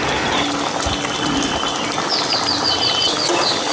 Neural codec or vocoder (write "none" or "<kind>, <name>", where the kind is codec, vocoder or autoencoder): none